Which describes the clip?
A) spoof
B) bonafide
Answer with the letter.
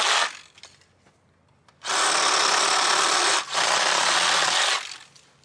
B